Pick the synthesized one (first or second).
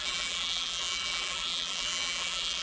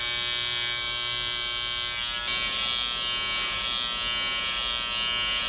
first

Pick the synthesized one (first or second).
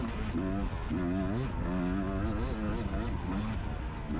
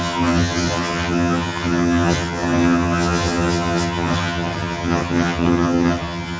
second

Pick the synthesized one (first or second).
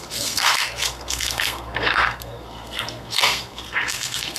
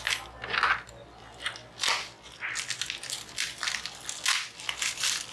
first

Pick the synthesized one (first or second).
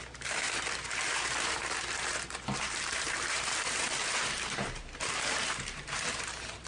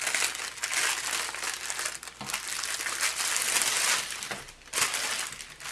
first